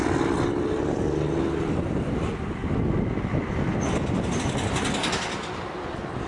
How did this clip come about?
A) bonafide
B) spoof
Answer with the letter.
A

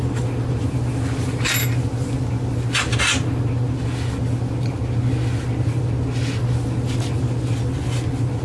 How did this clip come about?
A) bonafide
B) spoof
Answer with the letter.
A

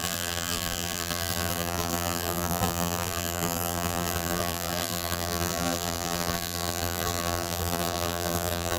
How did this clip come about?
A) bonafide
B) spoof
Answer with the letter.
B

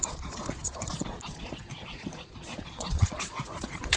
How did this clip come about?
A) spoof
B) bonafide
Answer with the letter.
A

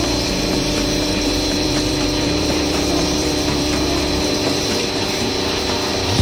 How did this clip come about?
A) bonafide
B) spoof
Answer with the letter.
B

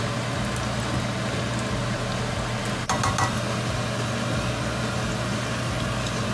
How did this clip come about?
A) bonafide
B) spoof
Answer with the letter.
A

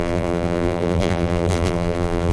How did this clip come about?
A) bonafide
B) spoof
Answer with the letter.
B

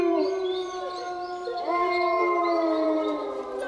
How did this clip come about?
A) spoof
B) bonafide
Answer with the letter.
A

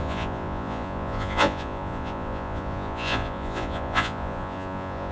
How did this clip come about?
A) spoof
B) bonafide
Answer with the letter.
A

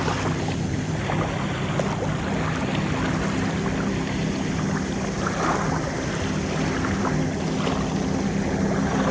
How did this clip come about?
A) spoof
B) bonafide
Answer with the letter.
B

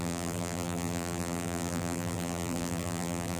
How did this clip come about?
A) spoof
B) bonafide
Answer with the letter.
A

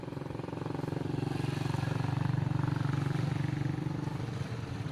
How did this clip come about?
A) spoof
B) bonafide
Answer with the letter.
B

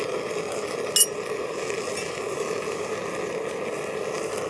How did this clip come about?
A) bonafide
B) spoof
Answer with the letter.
A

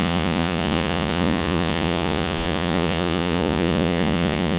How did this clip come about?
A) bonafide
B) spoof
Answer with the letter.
B